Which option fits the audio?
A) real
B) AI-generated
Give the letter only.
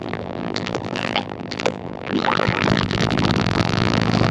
B